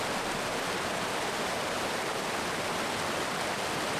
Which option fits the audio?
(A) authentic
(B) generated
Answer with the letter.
A